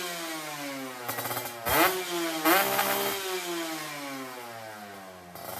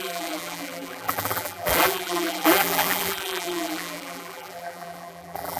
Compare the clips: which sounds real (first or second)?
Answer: first